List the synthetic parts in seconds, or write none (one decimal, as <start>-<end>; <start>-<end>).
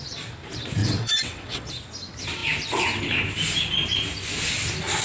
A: 0.8-1.7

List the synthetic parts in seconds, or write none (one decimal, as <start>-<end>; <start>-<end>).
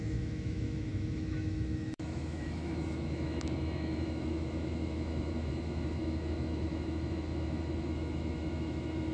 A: 0.0-9.1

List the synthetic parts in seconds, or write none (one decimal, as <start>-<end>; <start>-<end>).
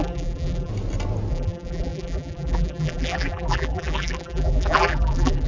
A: 0.0-0.7; 1.3-5.5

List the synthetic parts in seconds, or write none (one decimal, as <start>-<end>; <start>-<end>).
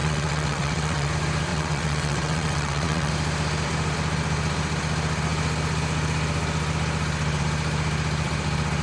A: 0.0-1.1; 1.5-3.1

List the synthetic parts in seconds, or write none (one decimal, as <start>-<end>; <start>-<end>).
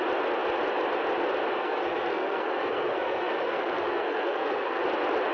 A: 1.6-4.8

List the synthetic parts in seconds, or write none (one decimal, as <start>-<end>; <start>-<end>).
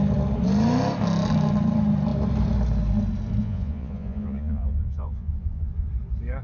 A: 3.4-5.9